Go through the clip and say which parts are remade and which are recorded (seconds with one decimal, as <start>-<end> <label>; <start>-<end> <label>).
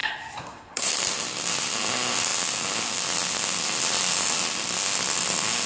0.0-0.9 remade; 0.9-5.7 recorded